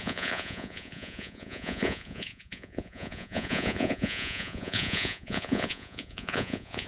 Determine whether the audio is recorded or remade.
remade